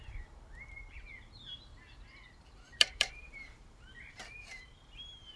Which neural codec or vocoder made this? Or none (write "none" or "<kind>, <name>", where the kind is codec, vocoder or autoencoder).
vocoder, BigVGAN v2